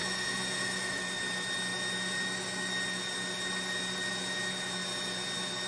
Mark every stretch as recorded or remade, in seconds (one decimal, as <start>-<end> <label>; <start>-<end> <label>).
0.0-1.0 remade; 1.0-5.7 recorded